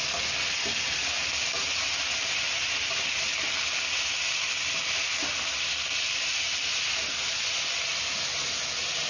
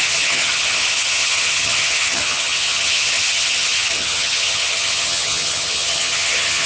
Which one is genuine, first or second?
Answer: first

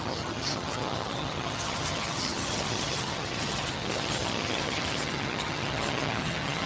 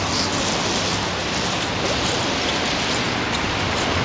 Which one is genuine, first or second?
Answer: second